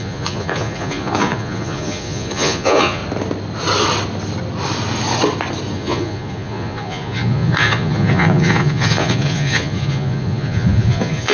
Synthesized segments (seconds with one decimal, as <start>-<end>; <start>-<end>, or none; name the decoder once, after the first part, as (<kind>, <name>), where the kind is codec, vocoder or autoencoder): 0.0-3.0 (vocoder, Vocos); 5.7-11.3